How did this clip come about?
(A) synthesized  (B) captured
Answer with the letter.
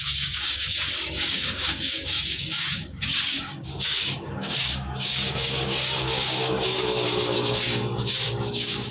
A